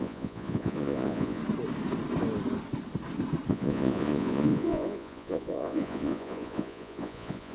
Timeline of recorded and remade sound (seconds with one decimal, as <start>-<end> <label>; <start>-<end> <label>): 0.0-1.4 remade; 1.4-3.5 recorded; 3.5-7.5 remade